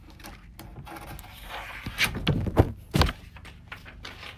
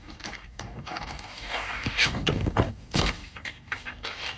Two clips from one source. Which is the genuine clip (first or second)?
first